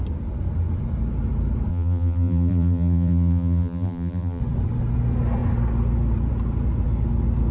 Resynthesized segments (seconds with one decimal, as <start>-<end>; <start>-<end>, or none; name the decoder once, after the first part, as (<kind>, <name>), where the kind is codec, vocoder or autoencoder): 1.7-4.4 (vocoder, BigVGAN v2)